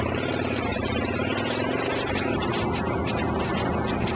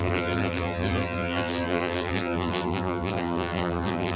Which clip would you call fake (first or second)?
second